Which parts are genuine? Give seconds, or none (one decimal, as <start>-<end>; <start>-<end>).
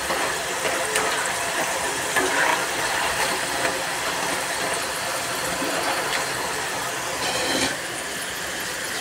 0.0-2.5; 6.1-9.0